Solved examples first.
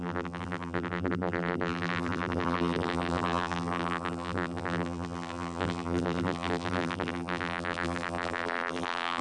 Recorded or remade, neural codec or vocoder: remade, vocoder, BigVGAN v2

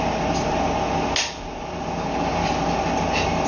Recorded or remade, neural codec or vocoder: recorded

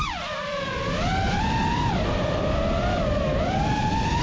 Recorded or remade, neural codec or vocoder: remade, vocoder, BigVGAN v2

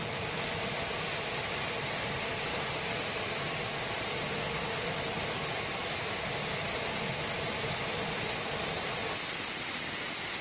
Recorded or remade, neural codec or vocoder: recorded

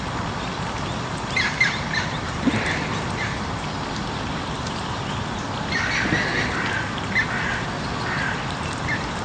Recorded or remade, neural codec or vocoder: recorded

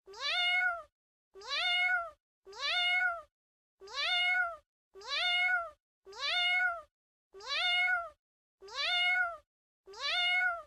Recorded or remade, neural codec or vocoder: remade, vocoder, BigVGAN v2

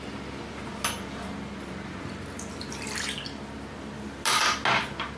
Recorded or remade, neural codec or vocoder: recorded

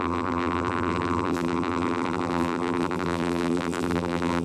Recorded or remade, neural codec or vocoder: remade, vocoder, BigVGAN v2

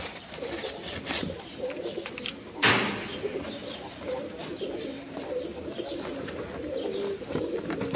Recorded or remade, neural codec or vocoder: remade, vocoder, BigVGAN v2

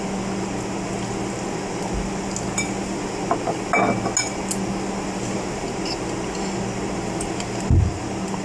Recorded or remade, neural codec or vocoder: recorded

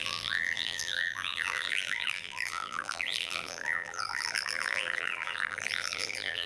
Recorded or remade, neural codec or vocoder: remade, vocoder, BigVGAN v2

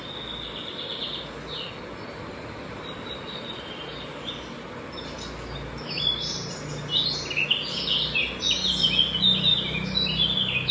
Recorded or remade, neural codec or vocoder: recorded